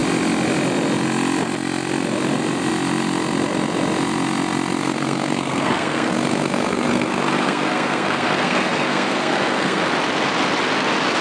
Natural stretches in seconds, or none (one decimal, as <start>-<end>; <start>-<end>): 0.0-4.8; 9.8-11.2